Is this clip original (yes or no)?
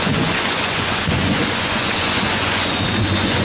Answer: no